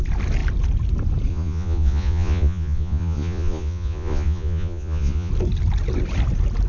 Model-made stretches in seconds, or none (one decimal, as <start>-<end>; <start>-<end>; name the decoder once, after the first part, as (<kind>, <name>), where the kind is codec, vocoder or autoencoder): 1.3-5.3 (vocoder, Vocos)